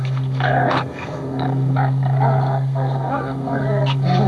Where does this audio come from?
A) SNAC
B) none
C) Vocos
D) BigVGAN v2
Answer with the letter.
A